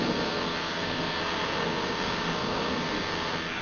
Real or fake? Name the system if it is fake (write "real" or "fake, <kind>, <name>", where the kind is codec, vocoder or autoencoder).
fake, codec, SNAC